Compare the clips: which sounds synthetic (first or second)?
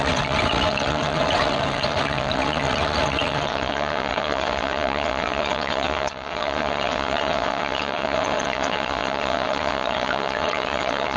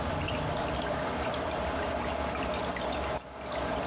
first